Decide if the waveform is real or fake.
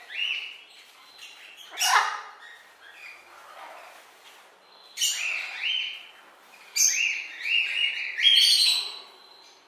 real